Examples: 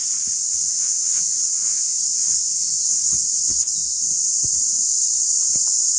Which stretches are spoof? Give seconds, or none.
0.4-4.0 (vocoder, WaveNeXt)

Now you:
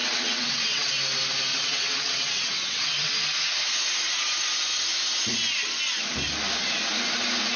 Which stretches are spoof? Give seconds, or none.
0.0-0.9 (vocoder, WaveNeXt); 1.5-3.1

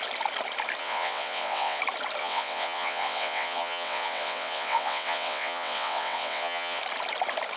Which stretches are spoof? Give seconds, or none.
0.8-1.8 (vocoder, WaveNeXt); 2.2-6.8

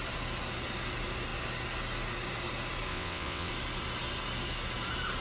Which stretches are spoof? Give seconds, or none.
2.9-3.5 (vocoder, WaveNeXt)

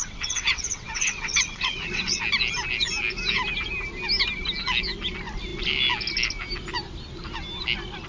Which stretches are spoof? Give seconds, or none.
0.0-2.2 (vocoder, WaveNeXt)